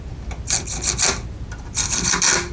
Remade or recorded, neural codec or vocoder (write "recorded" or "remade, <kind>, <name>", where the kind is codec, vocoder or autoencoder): recorded